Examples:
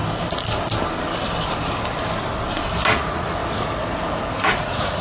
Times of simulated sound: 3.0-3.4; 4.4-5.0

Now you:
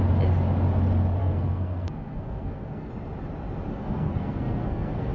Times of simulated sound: 1.2-2.9; 3.7-5.1

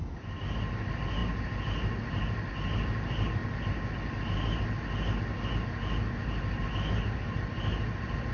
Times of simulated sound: none

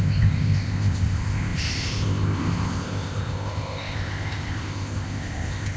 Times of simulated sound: 0.0-5.8